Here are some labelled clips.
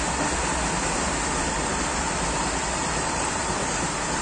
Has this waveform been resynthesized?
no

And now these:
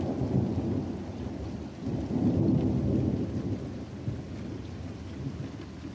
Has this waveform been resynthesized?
no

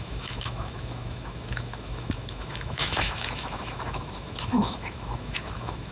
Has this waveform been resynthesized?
yes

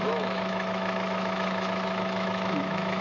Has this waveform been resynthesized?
yes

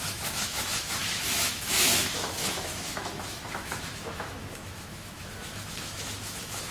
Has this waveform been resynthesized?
yes